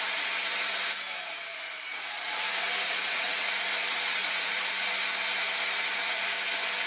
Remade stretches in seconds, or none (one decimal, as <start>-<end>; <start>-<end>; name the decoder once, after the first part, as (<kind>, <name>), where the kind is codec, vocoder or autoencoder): 1.5-2.4 (vocoder, Vocos); 2.8-3.6; 4.2-4.7